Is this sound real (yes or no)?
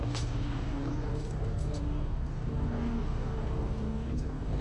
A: no